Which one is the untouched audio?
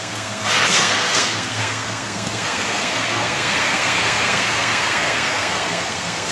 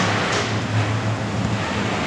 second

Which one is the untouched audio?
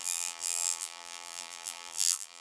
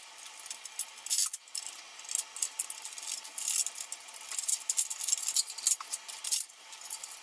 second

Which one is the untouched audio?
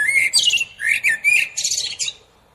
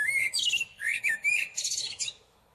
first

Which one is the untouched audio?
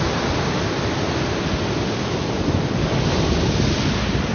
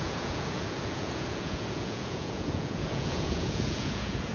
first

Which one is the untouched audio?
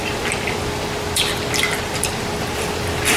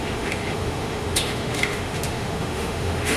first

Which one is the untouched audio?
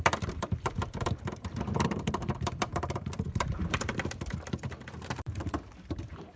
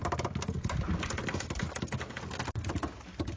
second